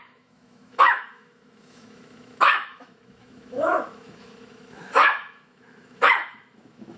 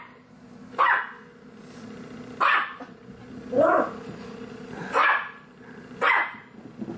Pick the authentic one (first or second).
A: second